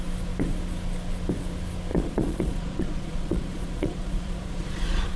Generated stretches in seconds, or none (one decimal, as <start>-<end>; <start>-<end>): 1.9-5.2